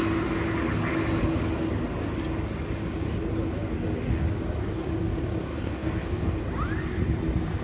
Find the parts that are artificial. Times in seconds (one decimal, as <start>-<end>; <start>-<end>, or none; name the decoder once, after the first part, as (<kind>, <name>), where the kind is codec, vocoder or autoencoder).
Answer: 5.5-6.4 (codec, SNAC)